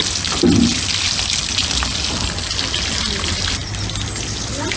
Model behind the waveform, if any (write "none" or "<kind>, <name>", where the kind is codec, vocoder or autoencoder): none